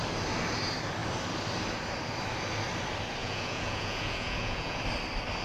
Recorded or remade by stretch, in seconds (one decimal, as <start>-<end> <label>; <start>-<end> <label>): 0.0-3.2 recorded; 3.2-4.8 remade; 4.8-5.4 recorded